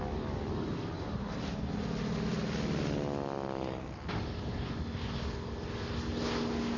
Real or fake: real